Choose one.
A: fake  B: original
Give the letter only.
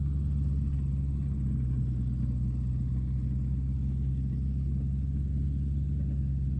B